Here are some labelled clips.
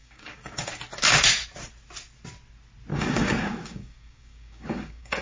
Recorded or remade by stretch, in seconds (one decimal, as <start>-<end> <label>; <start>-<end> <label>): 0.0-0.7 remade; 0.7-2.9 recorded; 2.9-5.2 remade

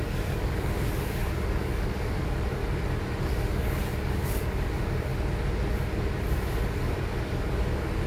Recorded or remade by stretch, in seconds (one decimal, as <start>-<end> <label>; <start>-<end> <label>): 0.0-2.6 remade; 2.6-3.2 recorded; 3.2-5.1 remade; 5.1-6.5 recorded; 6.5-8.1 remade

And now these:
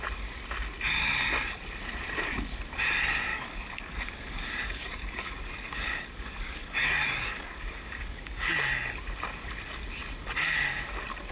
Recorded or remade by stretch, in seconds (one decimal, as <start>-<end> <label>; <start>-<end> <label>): 0.0-3.3 recorded; 3.3-8.5 remade; 8.5-11.3 recorded

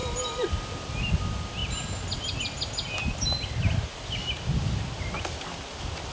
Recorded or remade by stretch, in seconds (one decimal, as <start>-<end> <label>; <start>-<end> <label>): 0.0-6.1 recorded